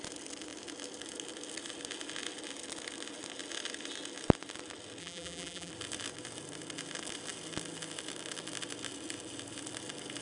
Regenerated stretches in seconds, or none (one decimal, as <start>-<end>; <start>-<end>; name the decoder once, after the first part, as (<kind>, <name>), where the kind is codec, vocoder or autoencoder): 5.0-5.7 (vocoder, BigVGAN v2)